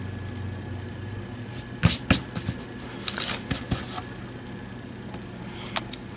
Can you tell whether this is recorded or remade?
recorded